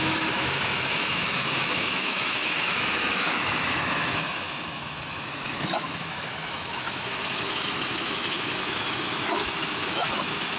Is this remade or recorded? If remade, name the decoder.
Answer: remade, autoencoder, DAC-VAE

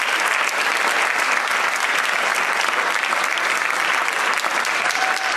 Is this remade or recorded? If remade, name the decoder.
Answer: remade, vocoder, BigVGAN v2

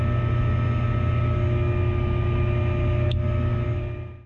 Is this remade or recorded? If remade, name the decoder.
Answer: recorded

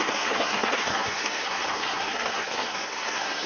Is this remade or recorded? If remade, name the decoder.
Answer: remade, codec, SNAC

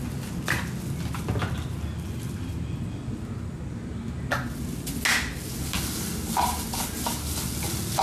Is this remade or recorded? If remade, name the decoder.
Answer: recorded